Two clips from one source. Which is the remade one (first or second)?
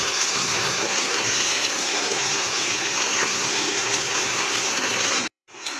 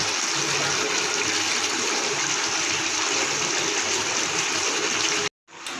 first